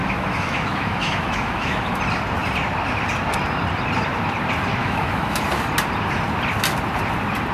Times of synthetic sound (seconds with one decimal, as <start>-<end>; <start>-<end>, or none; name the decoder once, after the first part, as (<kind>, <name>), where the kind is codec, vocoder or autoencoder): 0.0-2.0 (autoencoder, DAC-VAE); 4.8-5.4